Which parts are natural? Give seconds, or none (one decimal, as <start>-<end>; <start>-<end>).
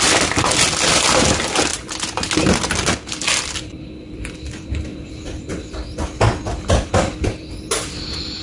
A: 0.0-8.4